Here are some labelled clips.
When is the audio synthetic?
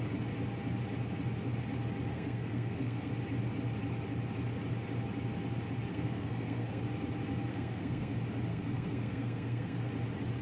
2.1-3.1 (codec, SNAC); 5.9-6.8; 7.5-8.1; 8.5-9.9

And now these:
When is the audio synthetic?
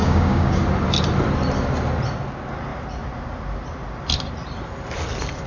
0.0-0.6 (codec, DAC)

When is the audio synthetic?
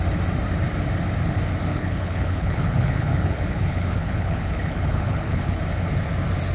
1.7-5.6 (codec, HILCodec)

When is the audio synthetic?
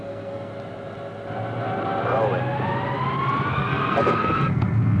0.0-0.5 (codec, SNAC); 3.5-5.0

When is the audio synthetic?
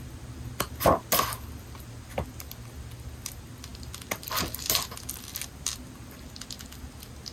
none